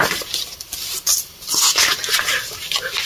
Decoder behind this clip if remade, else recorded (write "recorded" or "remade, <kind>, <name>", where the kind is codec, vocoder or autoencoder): recorded